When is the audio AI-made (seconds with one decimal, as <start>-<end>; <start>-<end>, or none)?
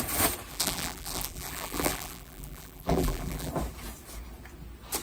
0.5-3.5